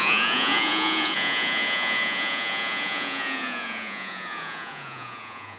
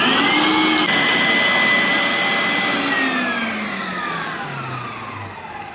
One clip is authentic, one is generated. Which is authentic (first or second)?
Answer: second